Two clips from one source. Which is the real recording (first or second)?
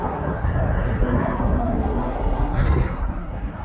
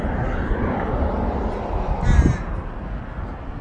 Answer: second